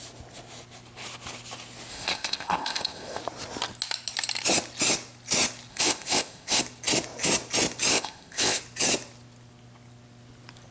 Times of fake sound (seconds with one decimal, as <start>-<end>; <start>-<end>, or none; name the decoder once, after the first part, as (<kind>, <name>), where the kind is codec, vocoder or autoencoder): 1.9-3.2 (codec, ZipCodec); 5.7-6.6; 7.9-8.6